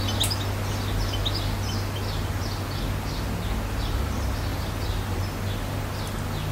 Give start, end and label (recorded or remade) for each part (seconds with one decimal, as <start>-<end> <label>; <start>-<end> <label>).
0.0-6.5 recorded